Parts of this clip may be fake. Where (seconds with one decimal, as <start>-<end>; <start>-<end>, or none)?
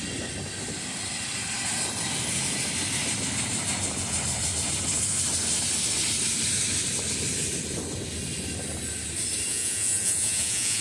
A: 9.5-10.8